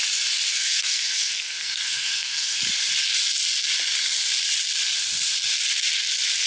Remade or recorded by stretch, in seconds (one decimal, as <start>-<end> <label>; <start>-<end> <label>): 0.0-0.5 recorded; 0.5-2.6 remade; 2.6-6.5 recorded

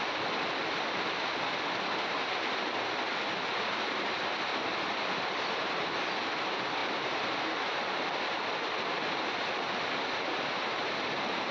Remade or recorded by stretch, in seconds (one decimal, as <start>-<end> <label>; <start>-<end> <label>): 0.0-4.5 recorded; 4.5-5.9 remade; 5.9-11.5 recorded

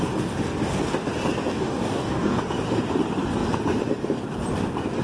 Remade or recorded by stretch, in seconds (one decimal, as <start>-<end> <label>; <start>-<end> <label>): 0.0-1.5 recorded; 1.5-2.4 remade; 2.4-5.0 recorded

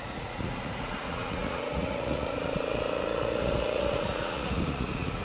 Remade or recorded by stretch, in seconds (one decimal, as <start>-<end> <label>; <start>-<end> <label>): 0.0-5.2 remade

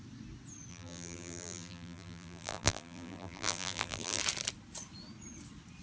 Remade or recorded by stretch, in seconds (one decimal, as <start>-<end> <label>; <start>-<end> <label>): 0.0-0.7 recorded; 0.7-4.2 remade; 4.2-5.8 recorded

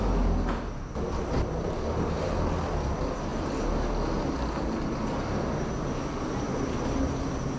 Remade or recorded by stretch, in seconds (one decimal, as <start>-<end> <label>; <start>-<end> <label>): 0.0-7.6 recorded

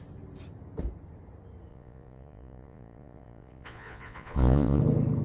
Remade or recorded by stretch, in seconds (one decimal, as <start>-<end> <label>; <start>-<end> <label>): 0.0-1.7 recorded; 1.7-4.8 remade; 4.8-5.2 recorded